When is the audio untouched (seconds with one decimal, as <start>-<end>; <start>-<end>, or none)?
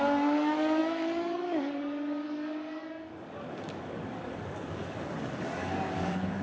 none